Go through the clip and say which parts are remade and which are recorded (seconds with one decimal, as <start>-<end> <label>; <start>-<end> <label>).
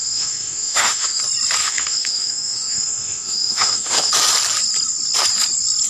0.0-1.2 remade; 1.2-1.6 recorded; 1.6-4.1 remade; 4.1-5.9 recorded